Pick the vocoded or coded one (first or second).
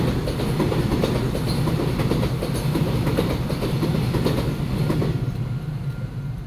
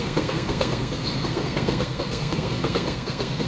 second